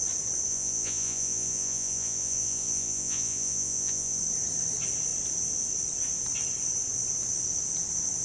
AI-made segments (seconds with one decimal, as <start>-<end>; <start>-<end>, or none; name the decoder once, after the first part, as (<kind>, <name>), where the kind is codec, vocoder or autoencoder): 0.5-4.2 (vocoder, Vocos)